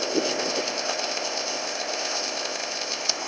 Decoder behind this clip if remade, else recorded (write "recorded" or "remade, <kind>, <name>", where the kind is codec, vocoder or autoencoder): remade, codec, ZipCodec